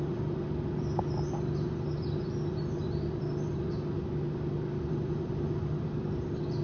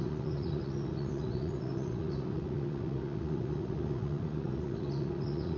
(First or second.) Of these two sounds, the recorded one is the first